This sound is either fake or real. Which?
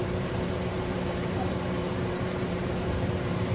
fake